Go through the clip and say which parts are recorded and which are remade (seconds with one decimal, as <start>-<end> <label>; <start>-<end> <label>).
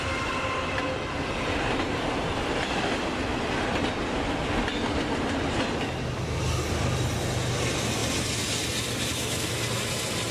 0.0-10.3 recorded